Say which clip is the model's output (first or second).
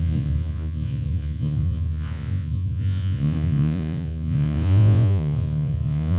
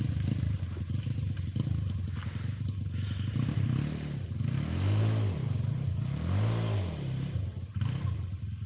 first